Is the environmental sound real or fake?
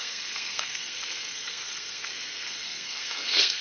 fake